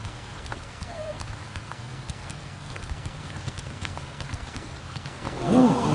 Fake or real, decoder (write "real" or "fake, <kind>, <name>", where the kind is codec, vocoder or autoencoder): fake, codec, SNAC